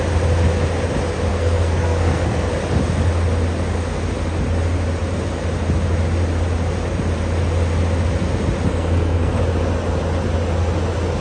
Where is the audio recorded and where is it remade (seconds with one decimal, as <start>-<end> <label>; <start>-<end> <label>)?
0.0-1.3 recorded; 1.3-2.5 remade; 2.5-8.7 recorded; 8.7-9.4 remade; 9.4-11.2 recorded

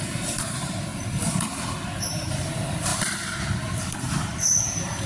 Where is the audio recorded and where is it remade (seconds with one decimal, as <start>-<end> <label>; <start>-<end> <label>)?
0.0-0.9 remade; 0.9-2.1 recorded; 2.1-5.1 remade